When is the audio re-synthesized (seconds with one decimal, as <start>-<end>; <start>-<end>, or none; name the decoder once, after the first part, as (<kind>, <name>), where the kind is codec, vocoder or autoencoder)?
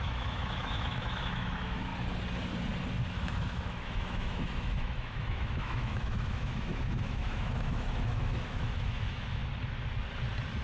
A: 0.0-1.9 (autoencoder, DAC-VAE); 3.1-9.4